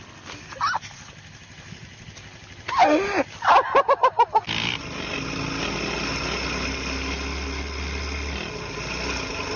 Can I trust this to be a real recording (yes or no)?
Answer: yes